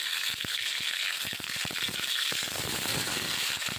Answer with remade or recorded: remade